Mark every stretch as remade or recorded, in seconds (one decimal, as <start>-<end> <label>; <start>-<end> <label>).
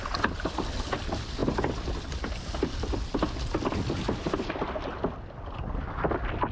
0.0-6.5 recorded